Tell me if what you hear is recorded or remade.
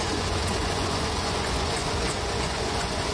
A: remade